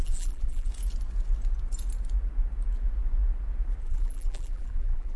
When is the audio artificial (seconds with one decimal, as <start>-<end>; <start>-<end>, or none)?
0.0-0.7; 3.8-5.2